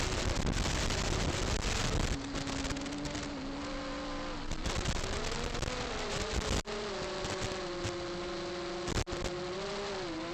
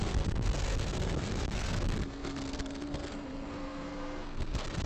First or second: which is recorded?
first